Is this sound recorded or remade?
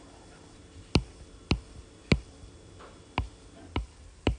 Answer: recorded